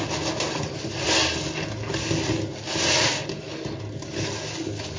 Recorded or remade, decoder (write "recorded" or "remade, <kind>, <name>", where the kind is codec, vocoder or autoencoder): recorded